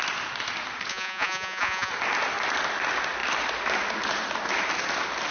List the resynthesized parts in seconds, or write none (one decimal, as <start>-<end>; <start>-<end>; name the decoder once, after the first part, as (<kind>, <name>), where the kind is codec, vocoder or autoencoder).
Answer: 0.9-1.9 (vocoder, Vocos)